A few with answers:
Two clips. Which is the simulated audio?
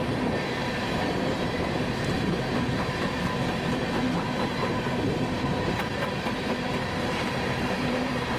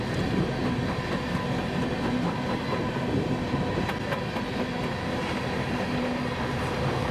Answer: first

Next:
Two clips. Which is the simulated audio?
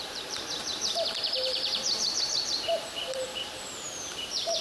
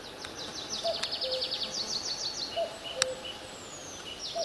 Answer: first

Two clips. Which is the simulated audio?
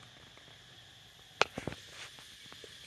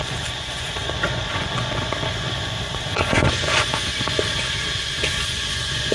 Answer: second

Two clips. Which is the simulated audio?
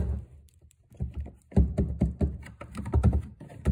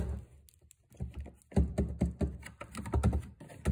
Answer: first